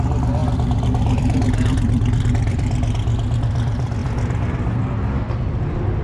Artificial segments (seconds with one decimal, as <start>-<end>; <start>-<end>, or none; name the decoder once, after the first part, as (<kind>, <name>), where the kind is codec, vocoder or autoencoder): 0.0-4.0 (vocoder, BigVGAN v2); 5.5-6.0